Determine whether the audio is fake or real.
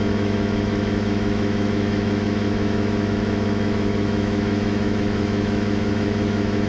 fake